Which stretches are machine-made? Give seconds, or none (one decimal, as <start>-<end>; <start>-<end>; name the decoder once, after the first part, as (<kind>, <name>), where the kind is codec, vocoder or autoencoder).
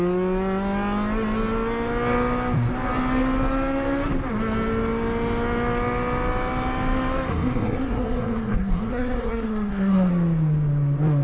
7.3-10.1 (codec, SNAC)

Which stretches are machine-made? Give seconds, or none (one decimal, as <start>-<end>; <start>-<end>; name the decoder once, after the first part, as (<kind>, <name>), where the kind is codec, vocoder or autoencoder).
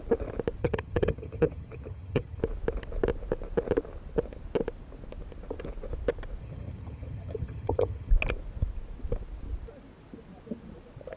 0.6-2.4 (vocoder, HiFi-GAN); 6.4-8.1